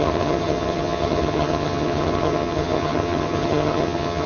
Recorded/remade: remade